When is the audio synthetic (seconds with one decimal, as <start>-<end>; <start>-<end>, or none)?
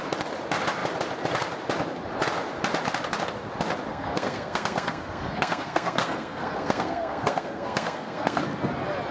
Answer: 3.9-8.4